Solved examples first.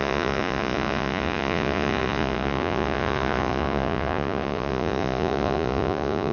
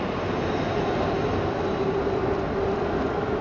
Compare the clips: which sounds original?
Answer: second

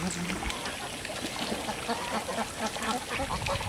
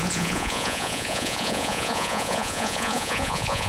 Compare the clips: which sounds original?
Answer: first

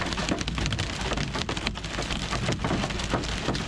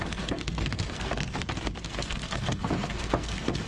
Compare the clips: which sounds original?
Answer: first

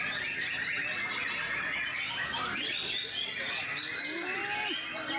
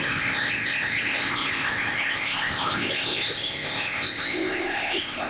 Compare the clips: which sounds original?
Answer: first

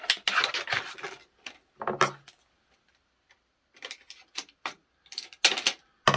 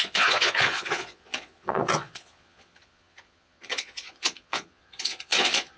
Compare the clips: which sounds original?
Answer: first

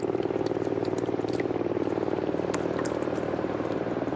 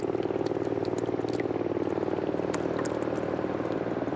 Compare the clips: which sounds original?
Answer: second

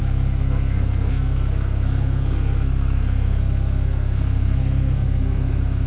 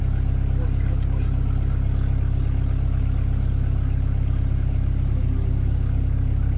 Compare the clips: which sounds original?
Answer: second